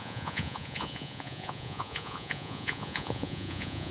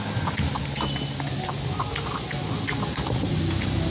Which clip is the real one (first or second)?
second